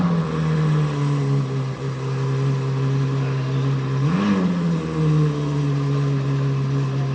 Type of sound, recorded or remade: recorded